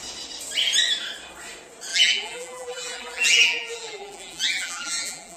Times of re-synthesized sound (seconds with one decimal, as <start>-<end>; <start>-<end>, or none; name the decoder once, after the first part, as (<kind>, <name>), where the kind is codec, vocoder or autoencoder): 1.9-5.4 (vocoder, BigVGAN v2)